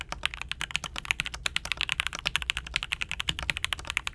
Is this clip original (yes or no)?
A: yes